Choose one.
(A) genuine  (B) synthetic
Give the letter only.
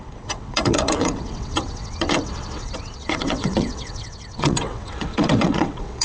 B